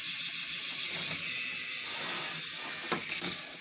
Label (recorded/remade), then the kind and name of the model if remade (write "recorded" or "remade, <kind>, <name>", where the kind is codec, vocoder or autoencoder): recorded